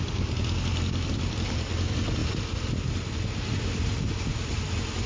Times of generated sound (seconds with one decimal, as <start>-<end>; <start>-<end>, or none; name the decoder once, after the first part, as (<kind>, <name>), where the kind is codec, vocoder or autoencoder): none